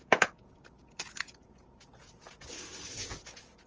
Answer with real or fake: fake